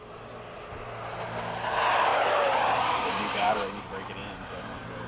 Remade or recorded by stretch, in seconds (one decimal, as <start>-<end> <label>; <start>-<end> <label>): 0.0-2.1 recorded; 2.1-3.8 remade; 3.8-4.2 recorded; 4.2-5.1 remade